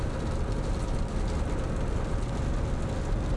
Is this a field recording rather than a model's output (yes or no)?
yes